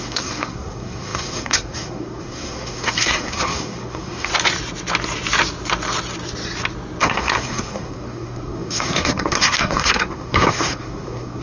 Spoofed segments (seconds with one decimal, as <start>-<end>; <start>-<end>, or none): 0.0-4.3; 7.0-11.4